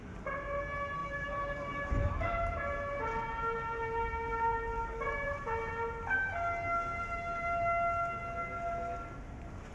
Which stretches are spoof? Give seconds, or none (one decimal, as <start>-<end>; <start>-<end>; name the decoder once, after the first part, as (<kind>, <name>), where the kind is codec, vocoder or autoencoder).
1.0-5.7 (vocoder, BigVGAN v2)